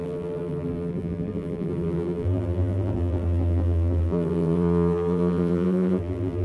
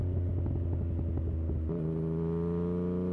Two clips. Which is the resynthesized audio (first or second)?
first